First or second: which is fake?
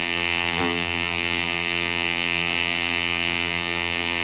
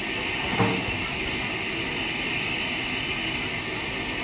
first